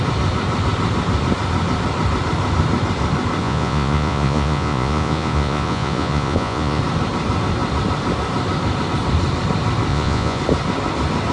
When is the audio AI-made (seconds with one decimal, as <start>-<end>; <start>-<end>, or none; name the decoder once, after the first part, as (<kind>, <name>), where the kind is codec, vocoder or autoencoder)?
3.4-6.8 (vocoder, Vocos); 9.9-10.4